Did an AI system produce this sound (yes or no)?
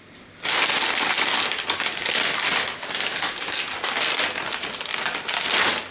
no